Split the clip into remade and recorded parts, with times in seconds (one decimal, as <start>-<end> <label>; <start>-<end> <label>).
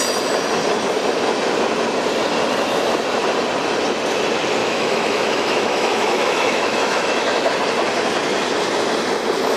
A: 0.0-4.6 recorded; 4.6-7.5 remade; 7.5-9.6 recorded